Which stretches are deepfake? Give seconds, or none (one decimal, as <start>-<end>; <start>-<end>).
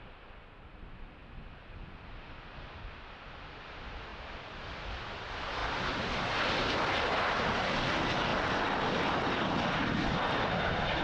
none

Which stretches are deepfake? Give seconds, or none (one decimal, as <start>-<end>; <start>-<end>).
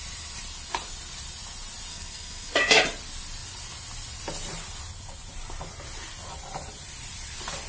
1.9-2.8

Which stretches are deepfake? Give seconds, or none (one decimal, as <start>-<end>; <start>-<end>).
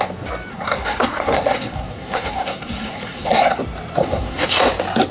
0.5-3.6; 4.0-4.6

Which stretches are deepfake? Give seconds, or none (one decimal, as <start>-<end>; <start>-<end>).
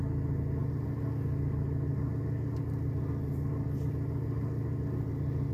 none